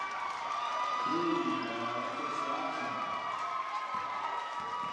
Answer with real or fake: real